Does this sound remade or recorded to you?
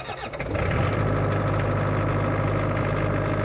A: recorded